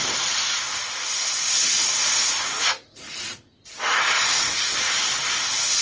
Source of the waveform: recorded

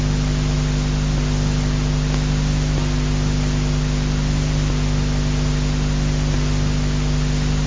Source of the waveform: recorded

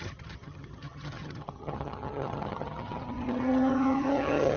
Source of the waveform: remade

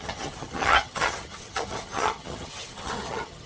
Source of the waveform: remade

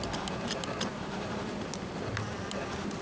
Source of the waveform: recorded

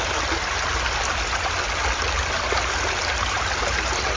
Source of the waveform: recorded